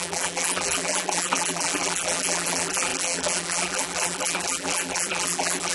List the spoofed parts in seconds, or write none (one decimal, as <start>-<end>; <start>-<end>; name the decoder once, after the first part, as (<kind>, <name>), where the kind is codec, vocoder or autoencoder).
0.0-5.7 (vocoder, BigVGAN v2)